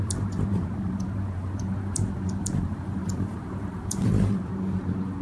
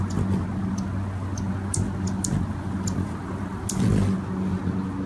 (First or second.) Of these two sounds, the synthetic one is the first